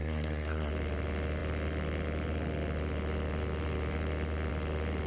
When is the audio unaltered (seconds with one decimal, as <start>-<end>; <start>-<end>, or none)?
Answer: 0.7-5.1